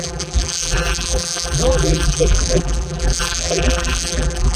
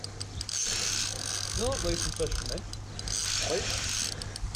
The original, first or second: second